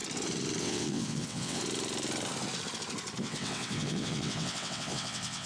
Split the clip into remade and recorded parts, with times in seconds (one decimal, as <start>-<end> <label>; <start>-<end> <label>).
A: 0.0-0.6 recorded; 0.6-1.6 remade; 1.6-3.2 recorded; 3.2-5.5 remade